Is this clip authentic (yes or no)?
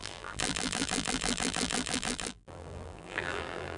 no